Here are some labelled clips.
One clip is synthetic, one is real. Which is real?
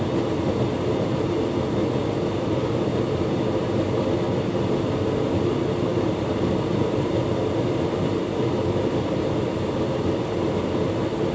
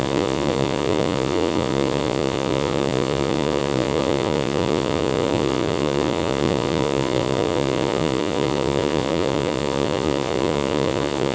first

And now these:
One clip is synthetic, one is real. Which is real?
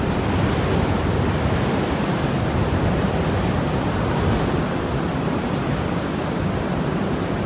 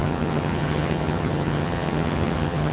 first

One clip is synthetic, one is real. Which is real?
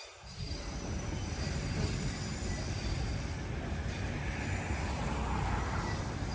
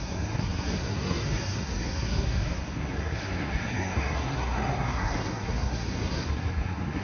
first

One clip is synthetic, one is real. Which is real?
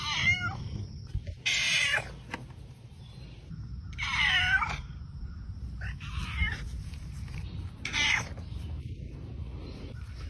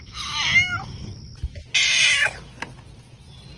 second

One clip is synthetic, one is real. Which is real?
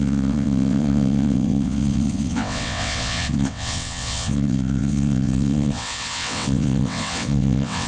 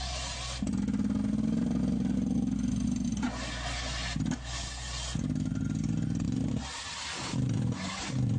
second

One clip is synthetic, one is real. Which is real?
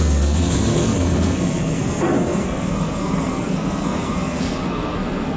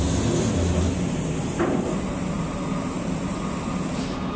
second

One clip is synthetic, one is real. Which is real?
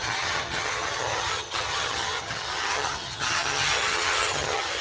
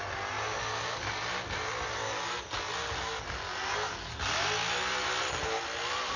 second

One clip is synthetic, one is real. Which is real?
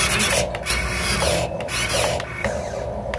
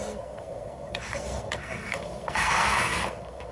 first